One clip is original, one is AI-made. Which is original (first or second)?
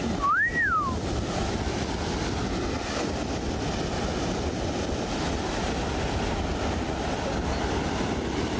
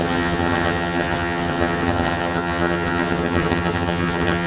first